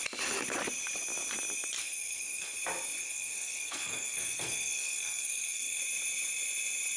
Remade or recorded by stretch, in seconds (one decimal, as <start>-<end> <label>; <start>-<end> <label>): 0.0-1.8 recorded; 1.8-2.6 remade; 2.6-3.0 recorded; 3.0-5.8 remade; 5.8-7.0 recorded